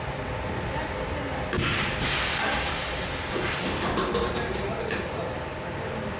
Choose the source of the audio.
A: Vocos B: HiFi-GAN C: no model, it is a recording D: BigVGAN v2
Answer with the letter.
C